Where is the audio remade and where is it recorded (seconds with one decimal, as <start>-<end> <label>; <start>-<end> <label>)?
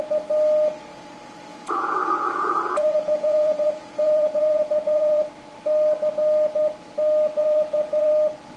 0.0-1.5 recorded; 1.5-5.3 remade; 5.3-7.4 recorded; 7.4-8.1 remade; 8.1-8.6 recorded